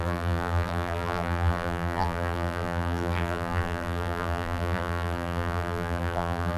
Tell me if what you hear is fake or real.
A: fake